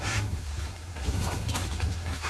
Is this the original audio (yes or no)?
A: no